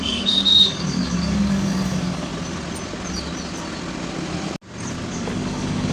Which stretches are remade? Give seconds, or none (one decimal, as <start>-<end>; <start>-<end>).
0.0-2.3; 5.1-5.9